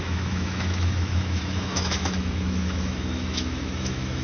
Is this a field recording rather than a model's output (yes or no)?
no